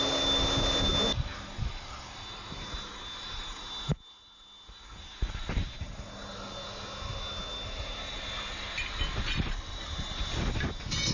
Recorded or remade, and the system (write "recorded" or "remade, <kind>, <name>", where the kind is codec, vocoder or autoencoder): recorded